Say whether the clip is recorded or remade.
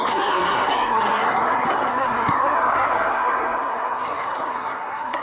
remade